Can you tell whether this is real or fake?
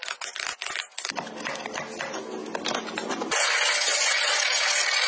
real